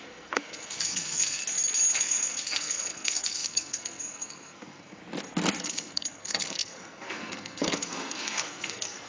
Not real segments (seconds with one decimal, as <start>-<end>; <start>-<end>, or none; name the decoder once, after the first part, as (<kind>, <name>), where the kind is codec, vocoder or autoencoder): 0.0-1.4 (codec, SNAC); 1.9-5.0; 5.6-9.1